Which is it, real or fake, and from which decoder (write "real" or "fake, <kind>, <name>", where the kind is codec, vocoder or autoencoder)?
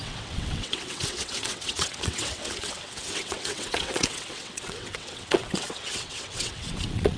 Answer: fake, vocoder, WaveNeXt